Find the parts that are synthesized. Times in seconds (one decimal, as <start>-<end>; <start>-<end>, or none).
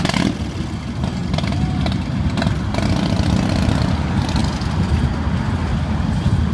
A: none